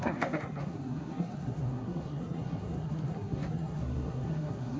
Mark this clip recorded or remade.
remade